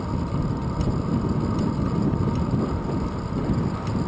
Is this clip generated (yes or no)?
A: no